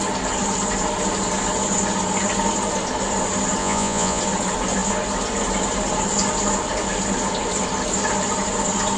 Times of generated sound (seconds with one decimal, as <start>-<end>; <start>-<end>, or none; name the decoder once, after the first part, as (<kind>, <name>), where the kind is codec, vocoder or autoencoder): 3.6-4.2 (vocoder, Vocos)